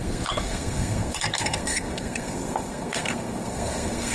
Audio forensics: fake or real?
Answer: fake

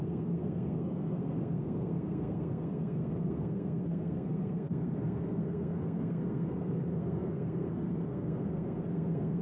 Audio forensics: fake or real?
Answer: fake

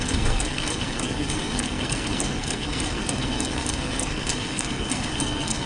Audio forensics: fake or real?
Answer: fake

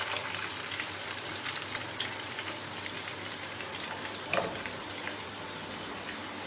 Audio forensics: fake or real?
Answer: real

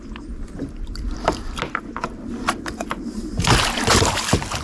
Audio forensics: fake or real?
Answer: real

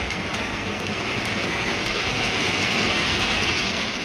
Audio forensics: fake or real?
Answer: fake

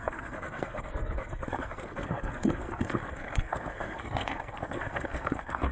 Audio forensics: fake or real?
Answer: fake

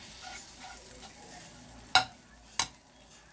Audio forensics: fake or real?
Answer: real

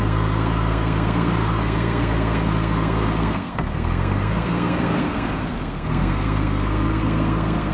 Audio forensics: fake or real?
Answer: fake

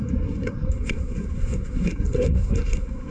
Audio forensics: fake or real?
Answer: fake